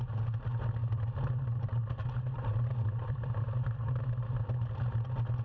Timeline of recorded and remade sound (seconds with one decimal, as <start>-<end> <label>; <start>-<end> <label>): 0.0-0.8 recorded; 0.8-4.0 remade; 4.0-5.4 recorded